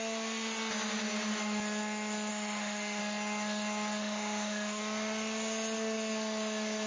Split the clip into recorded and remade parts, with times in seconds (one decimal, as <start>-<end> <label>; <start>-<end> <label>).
0.0-2.3 recorded; 2.3-3.0 remade; 3.0-4.0 recorded; 4.0-4.8 remade; 4.8-6.9 recorded